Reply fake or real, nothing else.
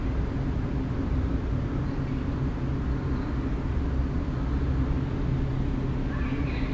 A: real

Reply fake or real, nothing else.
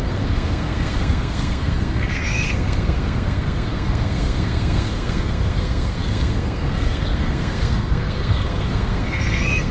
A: fake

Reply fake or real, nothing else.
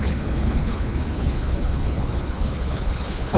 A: fake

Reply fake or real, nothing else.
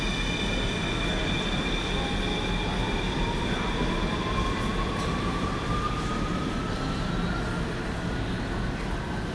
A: real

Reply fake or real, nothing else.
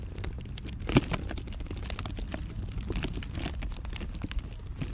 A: real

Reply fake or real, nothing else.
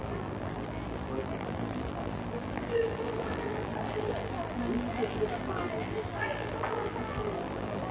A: fake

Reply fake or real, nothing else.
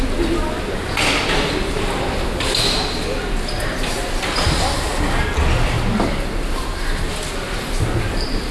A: real